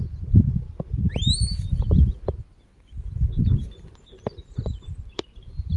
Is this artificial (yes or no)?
no